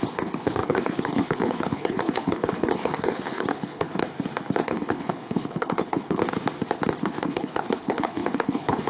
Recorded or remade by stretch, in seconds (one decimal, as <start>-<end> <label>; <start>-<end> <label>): 0.0-4.0 remade; 4.0-4.6 recorded; 4.6-6.2 remade; 6.2-7.0 recorded; 7.0-8.9 remade